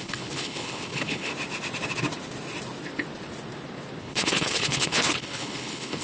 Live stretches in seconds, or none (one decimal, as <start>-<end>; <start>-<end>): 1.3-4.0